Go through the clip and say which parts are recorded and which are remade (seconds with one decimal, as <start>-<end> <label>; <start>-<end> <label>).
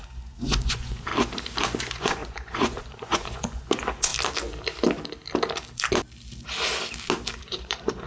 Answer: 0.0-1.1 remade; 1.1-1.8 recorded; 1.8-4.1 remade; 4.1-7.4 recorded; 7.4-8.1 remade